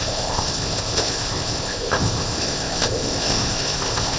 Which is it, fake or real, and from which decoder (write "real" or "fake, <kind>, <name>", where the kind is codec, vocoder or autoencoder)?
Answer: fake, codec, ZipCodec